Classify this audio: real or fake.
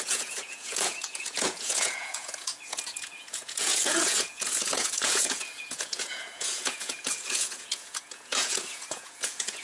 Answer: fake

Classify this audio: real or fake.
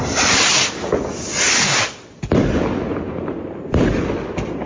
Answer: real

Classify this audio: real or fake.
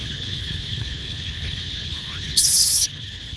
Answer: fake